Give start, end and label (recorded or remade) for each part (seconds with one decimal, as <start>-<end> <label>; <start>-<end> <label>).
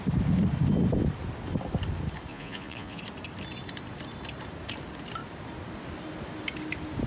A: 0.0-2.3 recorded; 2.3-3.0 remade; 3.0-7.1 recorded